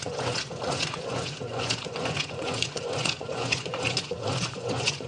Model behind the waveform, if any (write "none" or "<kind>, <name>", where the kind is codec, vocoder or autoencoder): vocoder, Vocos